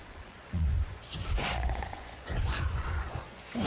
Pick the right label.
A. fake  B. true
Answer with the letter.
A